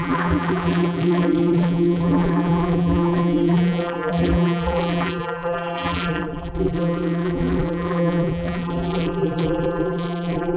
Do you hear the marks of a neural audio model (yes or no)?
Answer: yes